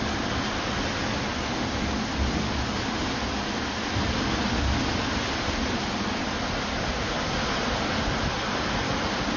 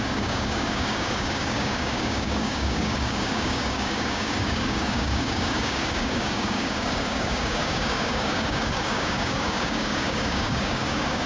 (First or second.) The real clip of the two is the first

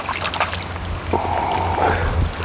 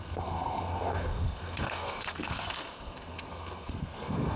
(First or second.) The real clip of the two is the first